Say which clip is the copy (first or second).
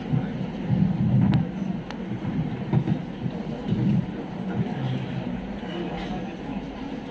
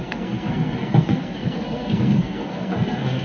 second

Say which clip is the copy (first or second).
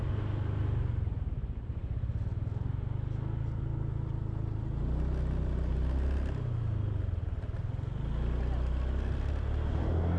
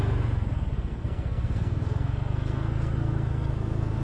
second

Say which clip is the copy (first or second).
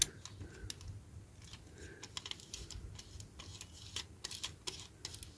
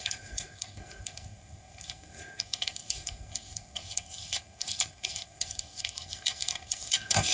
second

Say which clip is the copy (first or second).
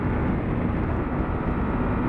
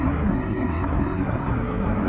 second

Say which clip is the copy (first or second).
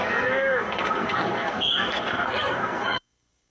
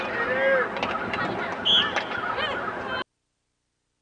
first